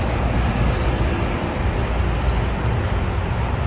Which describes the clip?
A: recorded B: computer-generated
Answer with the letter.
A